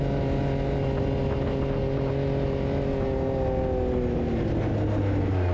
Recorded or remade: recorded